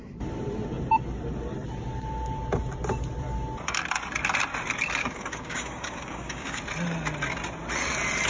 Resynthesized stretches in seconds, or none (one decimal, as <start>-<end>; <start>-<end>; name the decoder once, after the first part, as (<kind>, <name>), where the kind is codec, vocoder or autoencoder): 5.0-6.6 (codec, DAC)